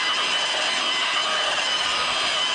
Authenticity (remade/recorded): recorded